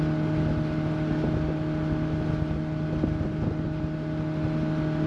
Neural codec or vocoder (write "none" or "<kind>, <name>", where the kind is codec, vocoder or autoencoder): none